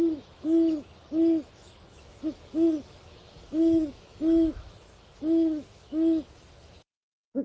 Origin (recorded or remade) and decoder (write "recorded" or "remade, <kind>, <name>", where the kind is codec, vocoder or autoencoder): remade, autoencoder, DAC-VAE